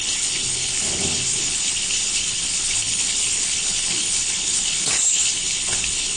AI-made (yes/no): yes